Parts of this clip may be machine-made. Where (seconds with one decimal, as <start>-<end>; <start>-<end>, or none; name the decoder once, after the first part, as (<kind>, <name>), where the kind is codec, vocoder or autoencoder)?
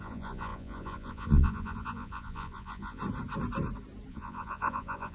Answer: 0.0-3.0 (vocoder, Vocos); 4.1-5.1